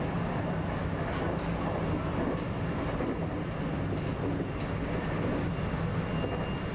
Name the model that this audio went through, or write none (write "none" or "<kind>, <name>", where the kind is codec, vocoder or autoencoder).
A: none